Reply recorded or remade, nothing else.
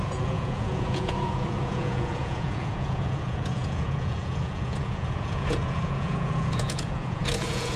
remade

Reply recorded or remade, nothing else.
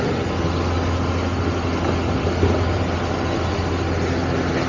recorded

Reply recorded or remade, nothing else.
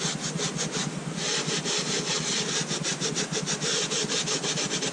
recorded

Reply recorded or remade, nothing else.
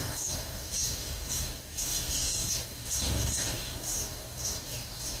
remade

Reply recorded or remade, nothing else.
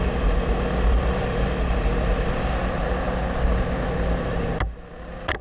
recorded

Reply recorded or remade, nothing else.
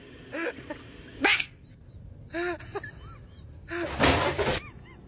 recorded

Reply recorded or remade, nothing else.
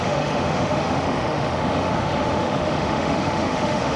remade